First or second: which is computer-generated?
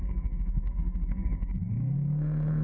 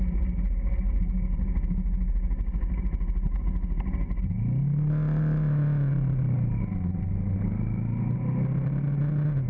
first